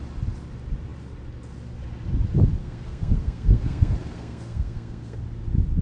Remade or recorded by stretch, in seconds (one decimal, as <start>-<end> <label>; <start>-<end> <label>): 0.0-2.6 recorded; 2.6-5.2 remade; 5.2-5.8 recorded